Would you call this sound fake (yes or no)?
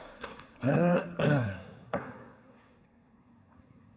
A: yes